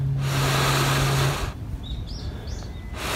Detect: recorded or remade recorded